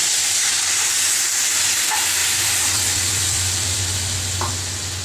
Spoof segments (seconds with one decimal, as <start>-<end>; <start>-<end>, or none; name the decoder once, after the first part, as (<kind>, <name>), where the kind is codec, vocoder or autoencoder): 2.2-3.8 (vocoder, BigVGAN v2)